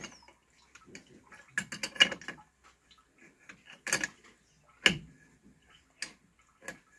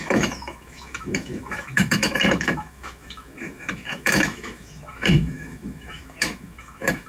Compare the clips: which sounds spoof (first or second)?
second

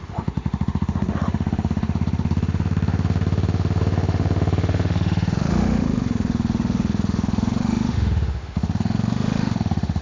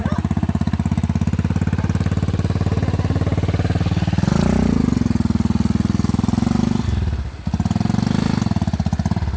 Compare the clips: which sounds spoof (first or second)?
first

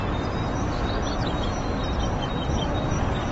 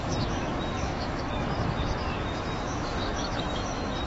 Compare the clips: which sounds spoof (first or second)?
second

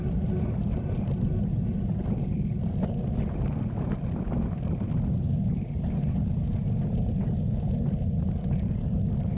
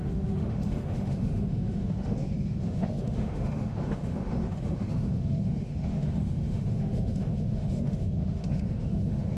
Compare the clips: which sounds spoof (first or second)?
second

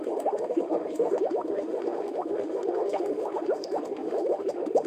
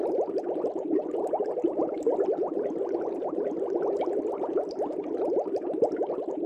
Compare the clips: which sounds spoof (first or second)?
first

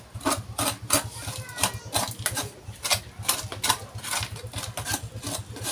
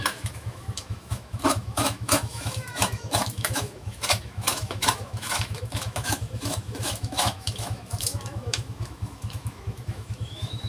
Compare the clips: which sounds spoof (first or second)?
second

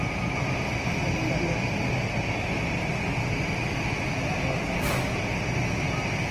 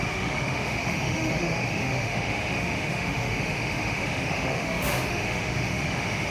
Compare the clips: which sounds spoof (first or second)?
second